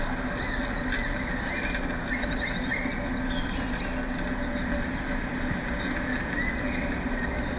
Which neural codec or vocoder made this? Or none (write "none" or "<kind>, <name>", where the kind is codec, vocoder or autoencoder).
none